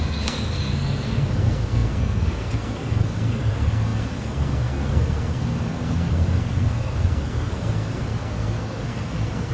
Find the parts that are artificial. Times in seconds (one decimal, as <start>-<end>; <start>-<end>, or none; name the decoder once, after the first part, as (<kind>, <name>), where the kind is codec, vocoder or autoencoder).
0.0-9.5 (codec, SNAC)